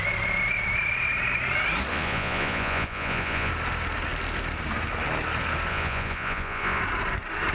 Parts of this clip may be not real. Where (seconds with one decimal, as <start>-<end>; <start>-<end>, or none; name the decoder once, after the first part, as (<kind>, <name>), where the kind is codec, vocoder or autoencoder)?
1.9-3.5 (vocoder, Vocos); 5.7-6.8